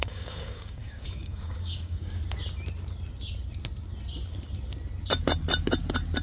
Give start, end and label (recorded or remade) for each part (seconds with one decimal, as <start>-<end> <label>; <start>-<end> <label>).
0.0-2.2 remade; 2.2-6.2 recorded